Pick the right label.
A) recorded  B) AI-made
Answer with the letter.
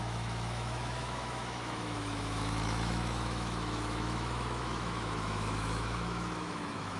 B